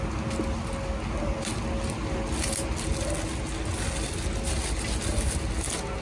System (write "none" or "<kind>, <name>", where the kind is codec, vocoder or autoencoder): none